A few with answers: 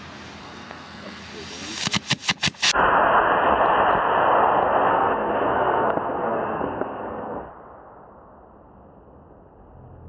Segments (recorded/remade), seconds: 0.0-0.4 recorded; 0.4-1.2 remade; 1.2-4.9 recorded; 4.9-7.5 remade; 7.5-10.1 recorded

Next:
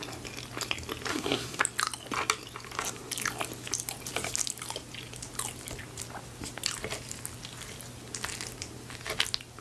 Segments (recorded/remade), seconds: 0.0-1.1 recorded; 1.1-1.6 remade; 1.6-9.6 recorded

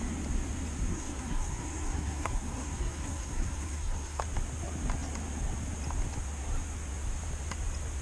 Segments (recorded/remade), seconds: 0.0-0.9 recorded; 0.9-4.2 remade; 4.2-8.0 recorded

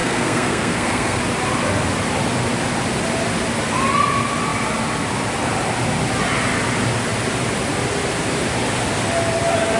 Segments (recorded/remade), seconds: 0.0-1.2 remade; 1.2-9.8 recorded

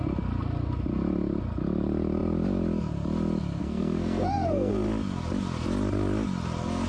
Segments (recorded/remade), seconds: 0.0-3.6 recorded; 3.6-4.7 remade; 4.7-6.9 recorded

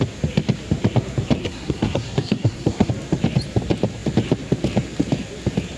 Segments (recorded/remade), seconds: 0.0-1.4 recorded; 1.4-2.9 remade; 2.9-5.8 recorded